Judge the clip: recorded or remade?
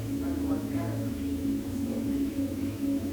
remade